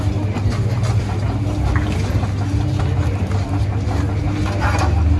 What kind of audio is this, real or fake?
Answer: real